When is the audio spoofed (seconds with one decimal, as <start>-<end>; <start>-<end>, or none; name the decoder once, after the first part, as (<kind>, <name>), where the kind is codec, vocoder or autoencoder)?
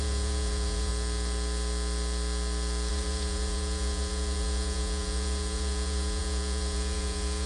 0.0-0.9 (vocoder, Vocos); 2.9-7.5